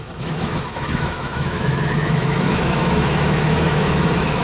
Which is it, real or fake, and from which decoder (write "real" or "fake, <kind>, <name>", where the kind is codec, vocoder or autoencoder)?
fake, autoencoder, DAC-VAE